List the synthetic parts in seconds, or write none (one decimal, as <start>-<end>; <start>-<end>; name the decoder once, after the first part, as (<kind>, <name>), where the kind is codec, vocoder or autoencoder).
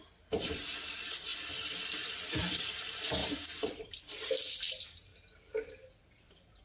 0.0-6.6 (vocoder, BigVGAN v2)